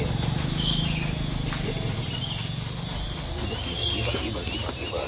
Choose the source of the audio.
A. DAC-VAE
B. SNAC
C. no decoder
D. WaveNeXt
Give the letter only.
C